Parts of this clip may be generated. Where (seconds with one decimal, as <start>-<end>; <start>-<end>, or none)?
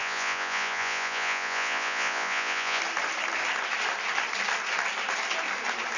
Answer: 0.0-2.8